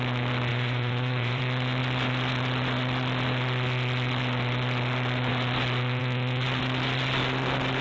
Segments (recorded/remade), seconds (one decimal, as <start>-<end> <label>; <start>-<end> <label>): 0.0-0.5 recorded; 0.5-1.4 remade; 1.4-7.8 recorded